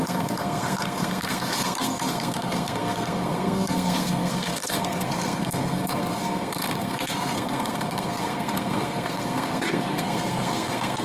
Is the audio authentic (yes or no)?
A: no